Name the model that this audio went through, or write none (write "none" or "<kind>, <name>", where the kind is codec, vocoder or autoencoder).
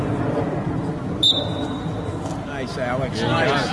none